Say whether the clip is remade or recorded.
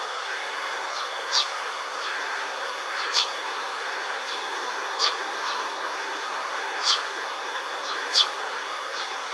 remade